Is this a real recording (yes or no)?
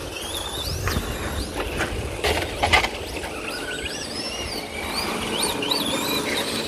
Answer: yes